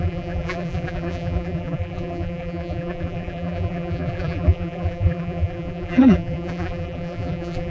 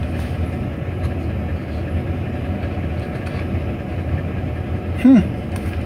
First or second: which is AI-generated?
first